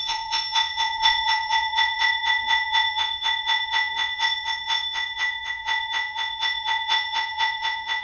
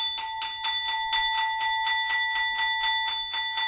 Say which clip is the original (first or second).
second